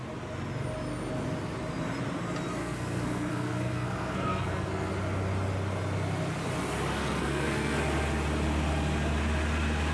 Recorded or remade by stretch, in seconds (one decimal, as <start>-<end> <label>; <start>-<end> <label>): 0.0-2.6 recorded; 2.6-4.9 remade; 4.9-7.0 recorded; 7.0-7.8 remade; 7.8-9.9 recorded